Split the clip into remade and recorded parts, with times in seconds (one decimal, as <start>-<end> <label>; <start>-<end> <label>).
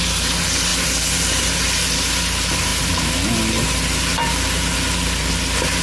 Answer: 0.0-5.8 recorded